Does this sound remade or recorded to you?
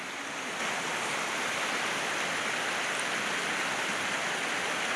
recorded